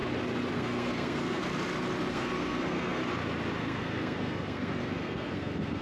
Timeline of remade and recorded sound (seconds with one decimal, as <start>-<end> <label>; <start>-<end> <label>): 0.0-0.5 recorded; 0.5-1.4 remade; 1.4-2.1 recorded; 2.1-3.0 remade; 3.0-3.6 recorded; 3.6-5.8 remade